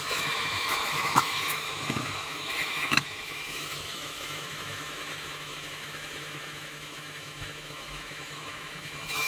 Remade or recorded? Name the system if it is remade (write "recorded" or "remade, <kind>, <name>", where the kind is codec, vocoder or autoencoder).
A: remade, autoencoder, DAC-VAE